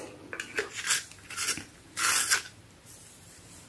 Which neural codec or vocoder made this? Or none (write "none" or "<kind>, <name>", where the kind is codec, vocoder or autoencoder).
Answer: none